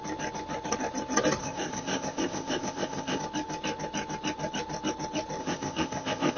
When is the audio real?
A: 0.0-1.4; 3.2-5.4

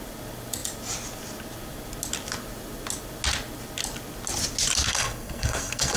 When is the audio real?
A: 0.0-4.9

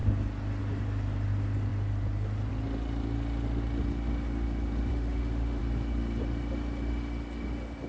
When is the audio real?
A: 0.0-4.9; 5.6-7.9

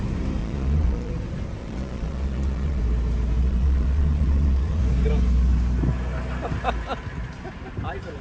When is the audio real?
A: 0.0-0.4; 1.1-1.6; 2.8-3.4; 4.8-8.2

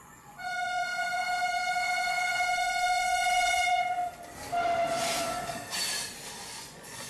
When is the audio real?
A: 4.0-6.5

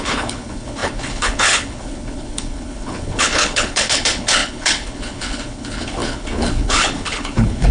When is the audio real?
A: none